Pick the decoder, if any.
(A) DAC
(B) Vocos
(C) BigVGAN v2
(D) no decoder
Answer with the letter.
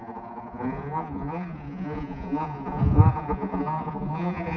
B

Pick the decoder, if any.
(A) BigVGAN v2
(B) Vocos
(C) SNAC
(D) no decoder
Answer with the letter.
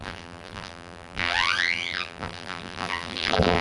A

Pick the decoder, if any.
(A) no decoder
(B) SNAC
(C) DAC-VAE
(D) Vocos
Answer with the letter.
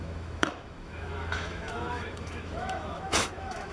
C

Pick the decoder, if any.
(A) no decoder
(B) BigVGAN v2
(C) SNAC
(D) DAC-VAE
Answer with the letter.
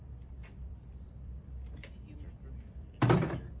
B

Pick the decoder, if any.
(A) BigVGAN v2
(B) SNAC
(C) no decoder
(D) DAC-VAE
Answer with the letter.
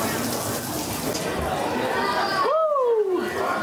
C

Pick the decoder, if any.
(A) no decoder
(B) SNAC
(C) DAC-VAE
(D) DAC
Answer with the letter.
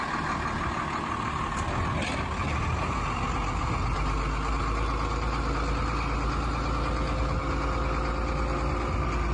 A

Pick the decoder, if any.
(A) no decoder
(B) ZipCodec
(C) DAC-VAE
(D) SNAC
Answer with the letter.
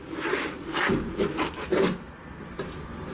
A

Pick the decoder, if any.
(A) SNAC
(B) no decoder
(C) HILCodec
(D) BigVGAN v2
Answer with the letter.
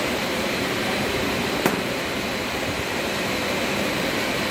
D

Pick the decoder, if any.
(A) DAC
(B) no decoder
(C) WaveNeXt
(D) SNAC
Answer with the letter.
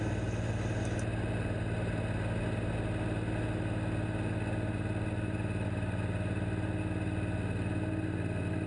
B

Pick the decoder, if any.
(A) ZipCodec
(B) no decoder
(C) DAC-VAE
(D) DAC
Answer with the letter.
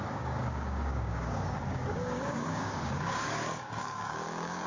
D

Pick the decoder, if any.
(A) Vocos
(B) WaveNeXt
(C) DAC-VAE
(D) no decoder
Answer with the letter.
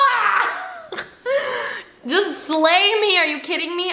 D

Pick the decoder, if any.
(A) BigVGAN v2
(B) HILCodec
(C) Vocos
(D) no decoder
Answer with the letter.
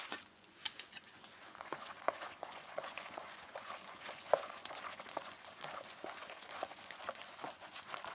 C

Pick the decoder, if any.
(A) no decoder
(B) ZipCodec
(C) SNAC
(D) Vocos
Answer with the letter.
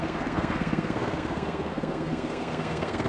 C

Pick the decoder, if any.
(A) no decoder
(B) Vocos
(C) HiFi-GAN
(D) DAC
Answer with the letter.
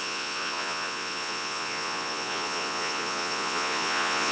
B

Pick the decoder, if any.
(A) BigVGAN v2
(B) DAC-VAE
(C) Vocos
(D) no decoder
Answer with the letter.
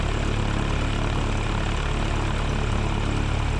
D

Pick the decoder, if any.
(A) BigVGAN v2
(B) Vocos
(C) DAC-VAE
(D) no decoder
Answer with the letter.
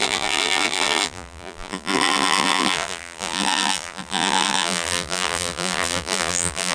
A